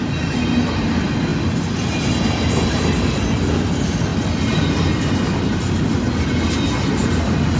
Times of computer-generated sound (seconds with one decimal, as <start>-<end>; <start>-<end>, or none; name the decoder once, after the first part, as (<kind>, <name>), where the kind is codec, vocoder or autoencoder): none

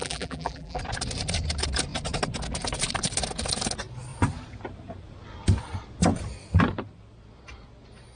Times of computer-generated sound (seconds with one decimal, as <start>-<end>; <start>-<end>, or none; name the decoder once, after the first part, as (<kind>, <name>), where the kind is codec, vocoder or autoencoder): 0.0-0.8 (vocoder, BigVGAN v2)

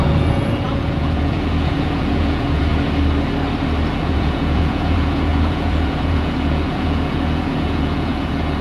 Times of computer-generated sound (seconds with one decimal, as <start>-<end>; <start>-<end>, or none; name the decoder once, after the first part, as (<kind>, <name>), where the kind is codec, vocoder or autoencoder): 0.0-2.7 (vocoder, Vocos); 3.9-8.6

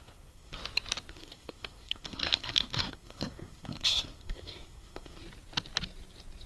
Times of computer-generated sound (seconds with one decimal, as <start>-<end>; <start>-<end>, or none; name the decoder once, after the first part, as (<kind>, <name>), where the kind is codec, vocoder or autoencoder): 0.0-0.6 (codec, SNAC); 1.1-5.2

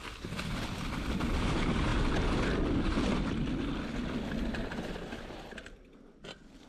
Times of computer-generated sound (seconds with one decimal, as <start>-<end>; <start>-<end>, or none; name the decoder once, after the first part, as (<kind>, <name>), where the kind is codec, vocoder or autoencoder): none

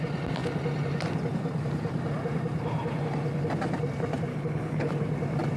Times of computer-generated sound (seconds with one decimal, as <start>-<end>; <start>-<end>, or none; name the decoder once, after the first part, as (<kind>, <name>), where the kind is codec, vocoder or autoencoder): 4.3-4.9 (codec, HILCodec)

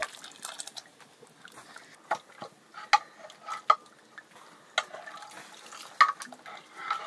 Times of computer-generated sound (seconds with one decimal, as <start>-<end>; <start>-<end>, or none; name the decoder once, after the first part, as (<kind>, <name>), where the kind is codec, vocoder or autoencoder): none

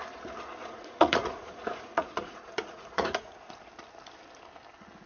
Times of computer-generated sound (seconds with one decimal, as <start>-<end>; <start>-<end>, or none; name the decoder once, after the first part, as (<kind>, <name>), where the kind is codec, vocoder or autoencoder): 0.6-3.7 (vocoder, Vocos)